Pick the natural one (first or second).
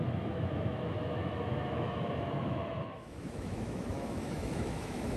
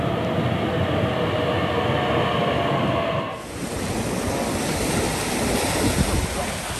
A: second